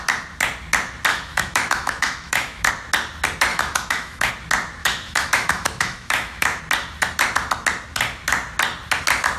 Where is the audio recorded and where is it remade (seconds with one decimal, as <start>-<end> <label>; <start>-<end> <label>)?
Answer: 0.0-1.1 recorded; 1.1-2.7 remade; 2.7-3.5 recorded; 3.5-4.3 remade; 4.3-4.8 recorded; 4.8-6.6 remade; 6.6-9.4 recorded